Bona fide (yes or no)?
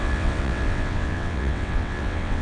no